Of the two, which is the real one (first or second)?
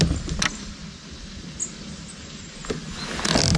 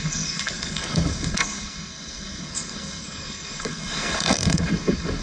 first